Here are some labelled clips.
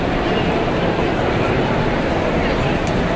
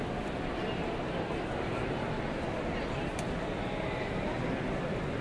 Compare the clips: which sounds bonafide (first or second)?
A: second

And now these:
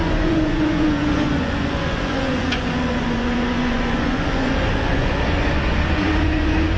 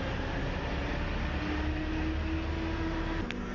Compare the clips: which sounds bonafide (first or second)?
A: second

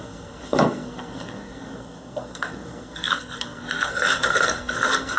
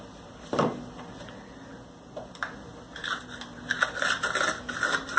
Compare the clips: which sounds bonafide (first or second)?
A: second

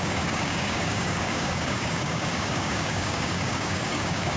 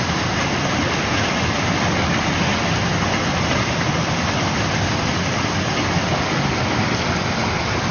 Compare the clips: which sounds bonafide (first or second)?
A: second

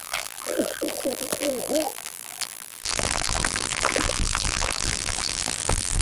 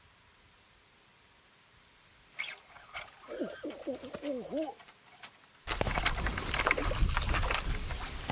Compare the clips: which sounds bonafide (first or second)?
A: second